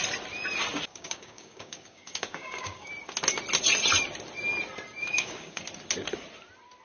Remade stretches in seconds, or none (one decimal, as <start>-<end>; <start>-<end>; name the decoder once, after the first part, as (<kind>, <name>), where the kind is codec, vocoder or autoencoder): 0.9-2.9 (codec, DAC); 5.1-5.6